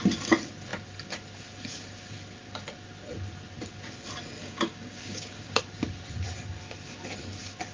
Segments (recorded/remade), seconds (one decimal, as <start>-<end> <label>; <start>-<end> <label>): 0.0-4.4 recorded; 4.4-5.6 remade; 5.6-7.7 recorded